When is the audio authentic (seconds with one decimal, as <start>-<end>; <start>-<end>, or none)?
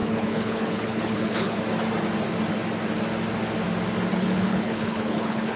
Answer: 1.6-4.1